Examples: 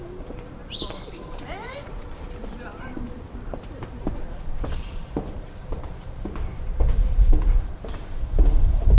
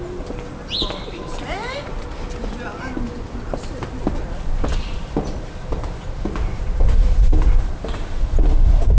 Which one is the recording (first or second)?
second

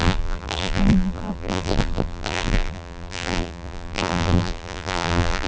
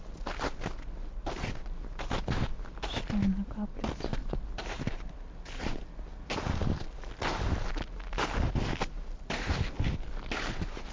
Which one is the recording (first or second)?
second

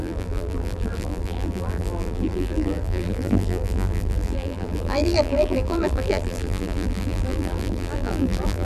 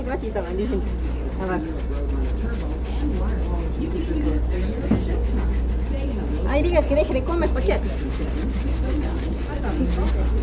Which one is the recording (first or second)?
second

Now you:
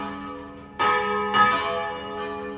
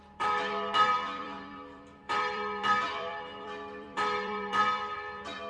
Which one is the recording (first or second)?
first